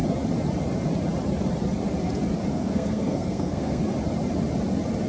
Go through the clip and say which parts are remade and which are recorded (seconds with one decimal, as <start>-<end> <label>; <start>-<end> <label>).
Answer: 0.0-2.5 recorded; 2.5-3.8 remade; 3.8-5.1 recorded